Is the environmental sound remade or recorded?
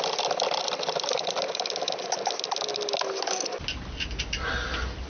recorded